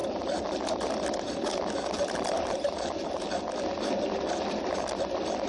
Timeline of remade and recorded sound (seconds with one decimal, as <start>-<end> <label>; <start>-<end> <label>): 0.0-5.5 recorded